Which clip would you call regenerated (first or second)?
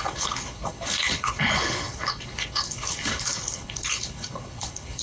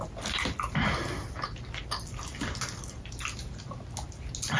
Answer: first